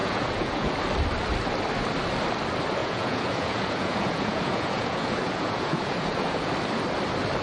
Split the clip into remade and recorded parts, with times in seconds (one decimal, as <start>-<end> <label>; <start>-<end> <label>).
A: 0.0-0.7 remade; 0.7-2.8 recorded; 2.8-6.5 remade; 6.5-7.4 recorded